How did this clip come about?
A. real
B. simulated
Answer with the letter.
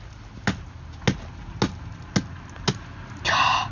A